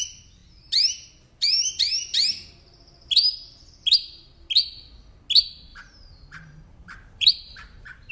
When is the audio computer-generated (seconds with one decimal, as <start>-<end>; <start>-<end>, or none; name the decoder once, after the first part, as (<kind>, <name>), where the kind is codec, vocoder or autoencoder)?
5.7-8.1 (vocoder, BigVGAN v2)